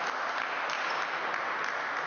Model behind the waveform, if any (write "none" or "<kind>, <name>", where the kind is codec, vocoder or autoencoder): none